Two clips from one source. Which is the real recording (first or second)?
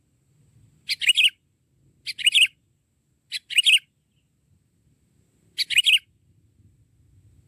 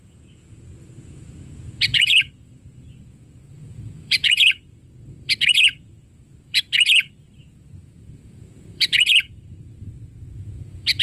first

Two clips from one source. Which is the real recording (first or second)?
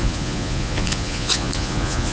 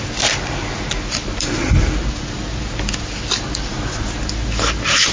second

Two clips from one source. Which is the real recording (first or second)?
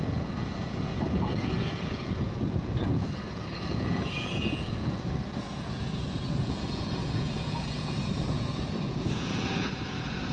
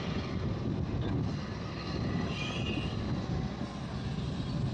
second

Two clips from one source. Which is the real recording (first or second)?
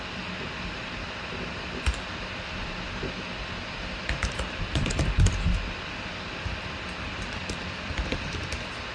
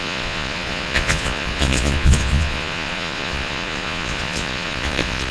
first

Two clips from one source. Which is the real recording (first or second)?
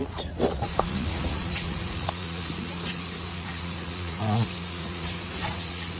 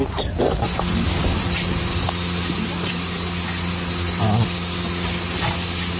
second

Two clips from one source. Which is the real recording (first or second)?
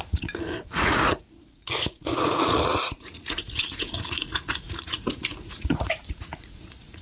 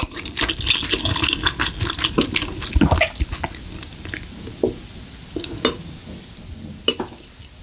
second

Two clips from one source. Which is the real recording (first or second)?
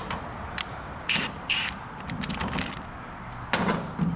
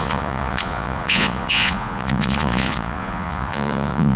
first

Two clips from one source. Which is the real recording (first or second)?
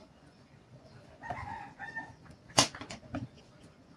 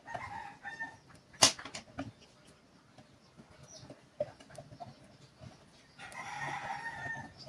second